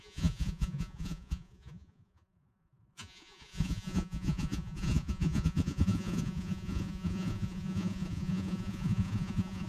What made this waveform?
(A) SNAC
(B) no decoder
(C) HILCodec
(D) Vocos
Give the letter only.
D